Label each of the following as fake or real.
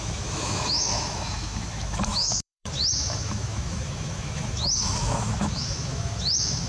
fake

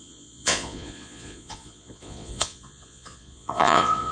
fake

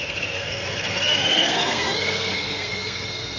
fake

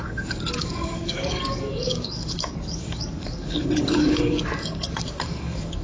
fake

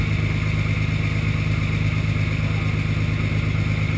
real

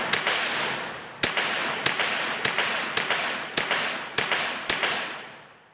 real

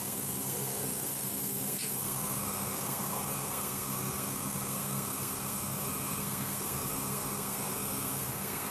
fake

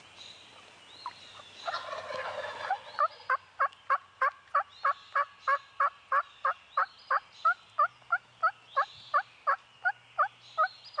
real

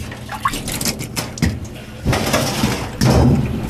real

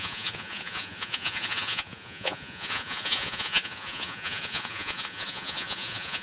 fake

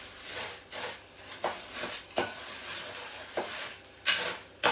real